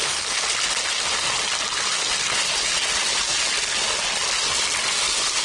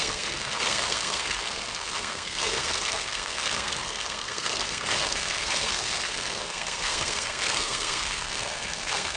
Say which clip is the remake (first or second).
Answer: second